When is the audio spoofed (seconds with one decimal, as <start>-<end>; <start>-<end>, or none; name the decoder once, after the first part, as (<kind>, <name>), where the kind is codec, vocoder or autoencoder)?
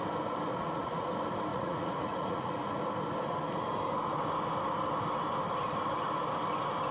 0.5-1.1 (vocoder, Vocos); 1.5-2.8